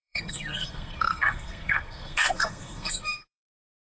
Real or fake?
fake